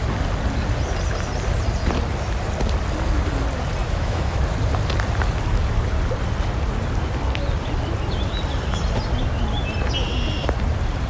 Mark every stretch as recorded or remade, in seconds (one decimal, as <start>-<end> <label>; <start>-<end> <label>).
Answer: 0.0-3.8 recorded; 3.8-4.4 remade; 4.4-11.1 recorded